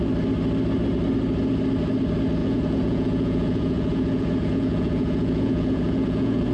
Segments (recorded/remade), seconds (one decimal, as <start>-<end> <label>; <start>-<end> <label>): 0.0-2.4 recorded; 2.4-6.5 remade